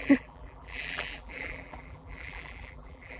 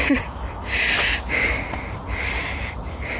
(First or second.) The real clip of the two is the second